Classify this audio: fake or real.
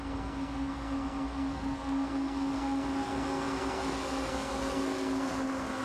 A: fake